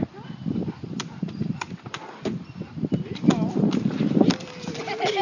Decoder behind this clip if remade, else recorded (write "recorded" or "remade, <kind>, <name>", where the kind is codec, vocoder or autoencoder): remade, vocoder, BigVGAN v2